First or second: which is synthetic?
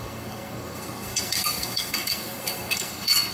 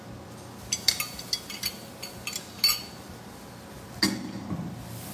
first